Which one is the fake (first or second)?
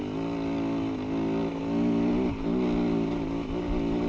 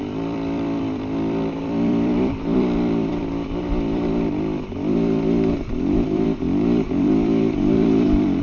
second